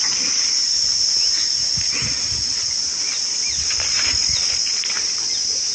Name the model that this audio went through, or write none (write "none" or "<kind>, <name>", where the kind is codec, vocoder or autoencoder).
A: none